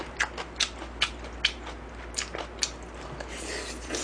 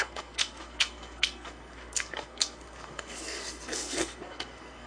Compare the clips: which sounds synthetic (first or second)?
second